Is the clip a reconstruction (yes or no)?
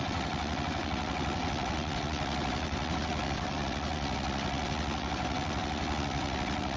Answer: yes